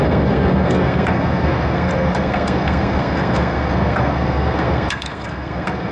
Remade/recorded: remade